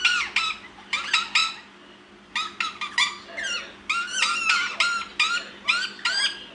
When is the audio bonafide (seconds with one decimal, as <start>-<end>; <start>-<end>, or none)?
0.0-6.5